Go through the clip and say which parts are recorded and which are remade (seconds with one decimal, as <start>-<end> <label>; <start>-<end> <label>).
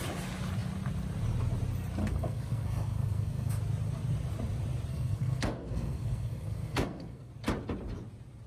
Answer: 0.0-2.0 recorded; 2.0-3.6 remade; 3.6-4.9 recorded; 4.9-7.3 remade; 7.3-8.5 recorded